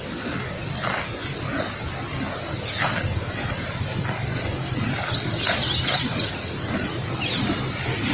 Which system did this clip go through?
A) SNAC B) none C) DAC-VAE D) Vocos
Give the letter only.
B